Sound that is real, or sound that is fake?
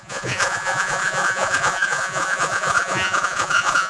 fake